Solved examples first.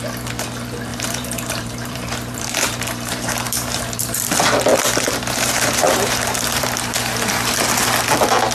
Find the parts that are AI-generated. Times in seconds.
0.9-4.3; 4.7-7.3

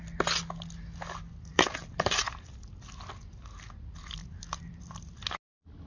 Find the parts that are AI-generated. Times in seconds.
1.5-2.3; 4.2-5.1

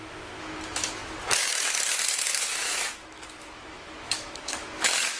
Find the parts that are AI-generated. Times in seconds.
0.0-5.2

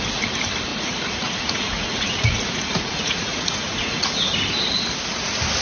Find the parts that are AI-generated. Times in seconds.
0.7-4.1

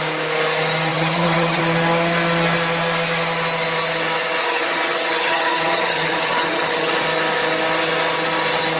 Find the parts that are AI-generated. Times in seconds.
0.9-1.6; 4.4-7.0